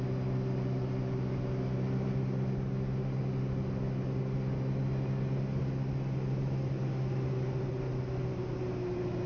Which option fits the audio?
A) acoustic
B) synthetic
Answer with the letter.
A